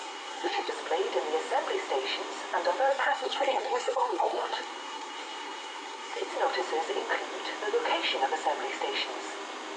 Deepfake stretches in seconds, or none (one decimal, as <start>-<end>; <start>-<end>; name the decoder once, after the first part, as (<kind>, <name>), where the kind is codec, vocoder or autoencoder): 0.0-0.7 (codec, SNAC); 2.9-6.3